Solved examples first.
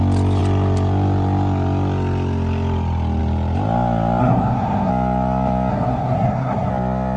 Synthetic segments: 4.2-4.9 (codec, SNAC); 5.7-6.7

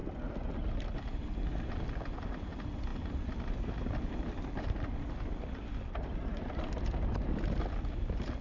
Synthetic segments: none

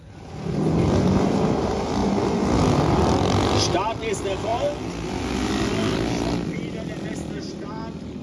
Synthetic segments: none

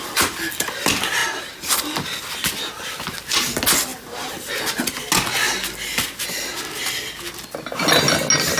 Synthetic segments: none

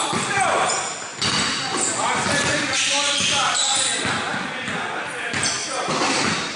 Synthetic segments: 1.1-2.9 (vocoder, BigVGAN v2)

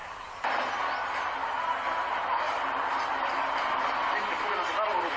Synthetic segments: 0.0-0.6 (vocoder, BigVGAN v2)

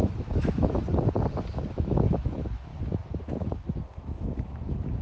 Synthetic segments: 0.0-0.9 (autoencoder, DAC-VAE); 1.7-2.7; 3.2-5.0